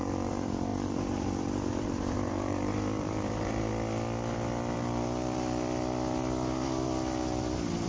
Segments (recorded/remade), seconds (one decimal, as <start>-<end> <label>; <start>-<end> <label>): 0.0-3.7 remade; 3.7-7.9 recorded